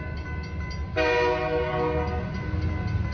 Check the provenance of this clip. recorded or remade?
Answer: recorded